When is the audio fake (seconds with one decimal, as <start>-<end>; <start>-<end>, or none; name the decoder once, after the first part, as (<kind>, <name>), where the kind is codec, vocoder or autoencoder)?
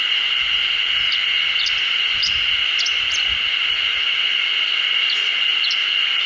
none